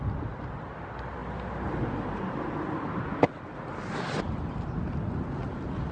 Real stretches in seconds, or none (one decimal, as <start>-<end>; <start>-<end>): 0.0-5.9

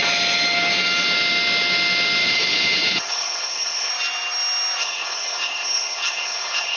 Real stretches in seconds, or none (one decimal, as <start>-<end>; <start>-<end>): 0.0-2.2; 3.9-4.8

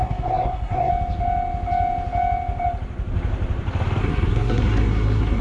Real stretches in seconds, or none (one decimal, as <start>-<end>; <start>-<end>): 0.9-4.0

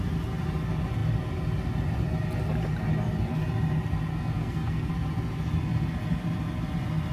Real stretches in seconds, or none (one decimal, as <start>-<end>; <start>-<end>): 0.0-4.1; 4.9-7.1